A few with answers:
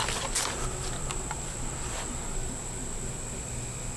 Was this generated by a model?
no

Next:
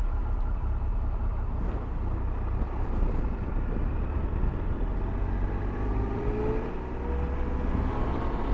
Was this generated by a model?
no